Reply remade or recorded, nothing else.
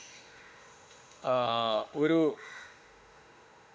remade